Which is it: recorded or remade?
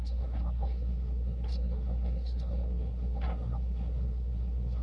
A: remade